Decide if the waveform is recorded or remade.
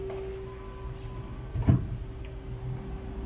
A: remade